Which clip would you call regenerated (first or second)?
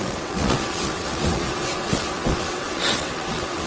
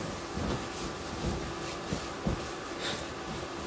first